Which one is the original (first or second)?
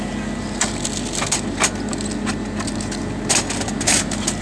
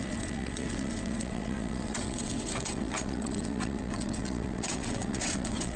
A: first